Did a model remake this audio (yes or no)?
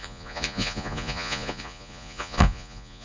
yes